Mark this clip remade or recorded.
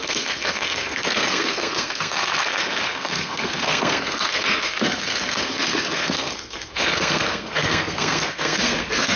remade